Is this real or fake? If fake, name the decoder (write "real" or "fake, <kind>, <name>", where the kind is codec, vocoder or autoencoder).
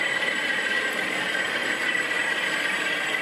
fake, vocoder, BigVGAN v2